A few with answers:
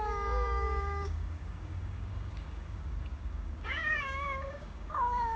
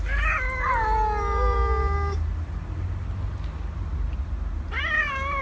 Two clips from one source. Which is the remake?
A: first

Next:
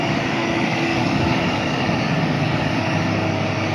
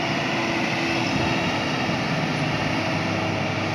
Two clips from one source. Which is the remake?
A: first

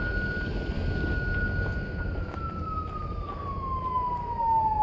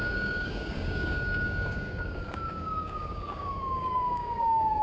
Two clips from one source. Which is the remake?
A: second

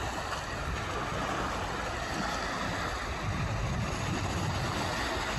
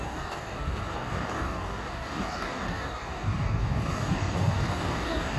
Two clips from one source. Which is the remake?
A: second